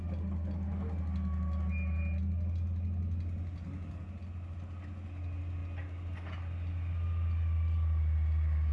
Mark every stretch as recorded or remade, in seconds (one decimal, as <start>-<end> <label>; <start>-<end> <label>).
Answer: 0.0-8.7 recorded